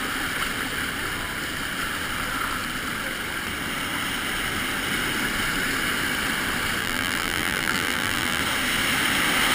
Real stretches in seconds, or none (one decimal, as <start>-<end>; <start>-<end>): 0.0-6.8; 8.4-9.5